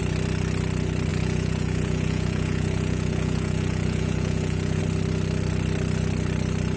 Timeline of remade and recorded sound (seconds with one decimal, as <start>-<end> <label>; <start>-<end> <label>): 0.0-1.1 recorded; 1.1-4.8 remade; 4.8-6.8 recorded